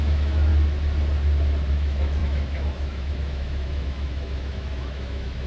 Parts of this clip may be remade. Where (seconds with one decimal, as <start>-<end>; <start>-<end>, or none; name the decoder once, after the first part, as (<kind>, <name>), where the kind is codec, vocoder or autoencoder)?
0.0-0.5 (autoencoder, DAC-VAE); 1.7-5.5